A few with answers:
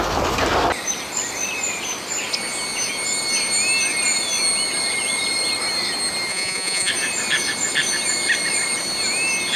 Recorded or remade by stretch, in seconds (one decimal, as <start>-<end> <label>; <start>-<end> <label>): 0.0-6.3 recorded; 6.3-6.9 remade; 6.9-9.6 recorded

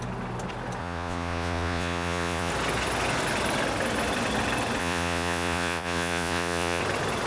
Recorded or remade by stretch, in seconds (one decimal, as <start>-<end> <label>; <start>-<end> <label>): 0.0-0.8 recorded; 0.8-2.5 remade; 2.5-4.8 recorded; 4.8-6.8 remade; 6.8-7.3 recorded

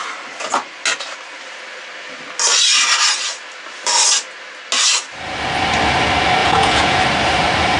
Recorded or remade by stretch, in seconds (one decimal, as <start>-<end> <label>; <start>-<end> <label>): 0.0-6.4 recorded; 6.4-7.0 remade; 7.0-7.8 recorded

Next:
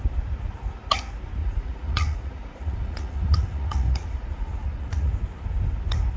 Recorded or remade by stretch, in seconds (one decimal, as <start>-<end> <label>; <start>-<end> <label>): 0.0-1.4 recorded; 1.4-5.1 remade; 5.1-6.2 recorded

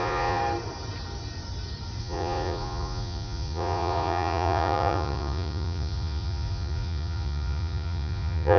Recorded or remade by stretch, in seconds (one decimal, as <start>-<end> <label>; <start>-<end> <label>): 0.0-0.4 remade; 0.4-2.0 recorded; 2.0-8.6 remade

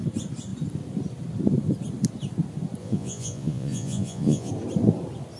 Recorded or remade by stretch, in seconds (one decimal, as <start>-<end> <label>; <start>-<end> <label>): 0.0-2.8 recorded; 2.8-4.5 remade; 4.5-5.4 recorded

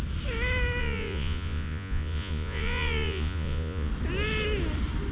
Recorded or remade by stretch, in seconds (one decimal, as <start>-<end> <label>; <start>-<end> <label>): 0.0-0.8 recorded; 0.8-3.9 remade; 3.9-5.1 recorded